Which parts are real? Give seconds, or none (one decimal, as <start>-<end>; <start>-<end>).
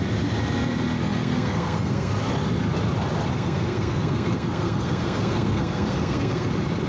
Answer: 0.0-1.0; 2.1-3.3; 6.5-6.9